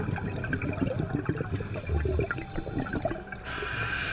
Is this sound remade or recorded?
recorded